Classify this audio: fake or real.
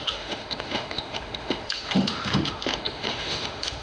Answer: fake